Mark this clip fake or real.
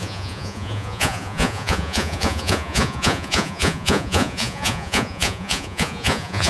fake